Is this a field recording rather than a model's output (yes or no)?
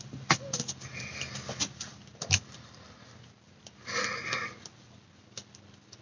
yes